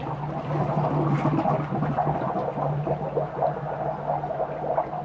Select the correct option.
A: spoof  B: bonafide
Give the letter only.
B